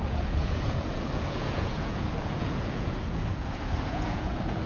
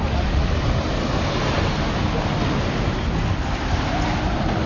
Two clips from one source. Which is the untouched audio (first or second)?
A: second